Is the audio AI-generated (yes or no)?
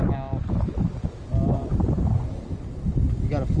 no